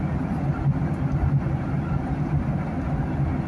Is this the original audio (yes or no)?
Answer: yes